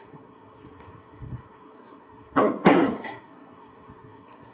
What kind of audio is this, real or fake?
fake